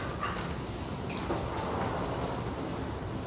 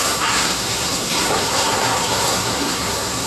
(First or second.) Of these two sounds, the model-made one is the second